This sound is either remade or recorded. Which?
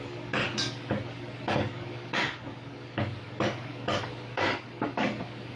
remade